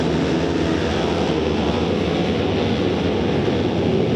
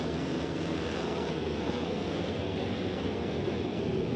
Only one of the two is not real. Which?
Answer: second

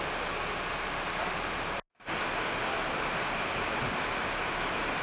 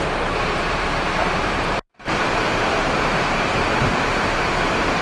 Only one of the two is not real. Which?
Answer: second